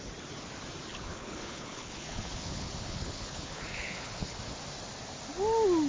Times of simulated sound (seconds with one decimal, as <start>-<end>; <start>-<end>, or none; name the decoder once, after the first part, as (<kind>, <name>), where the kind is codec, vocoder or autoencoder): 0.9-4.4 (codec, HILCodec)